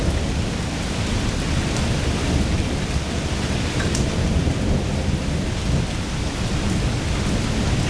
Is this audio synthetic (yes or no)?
no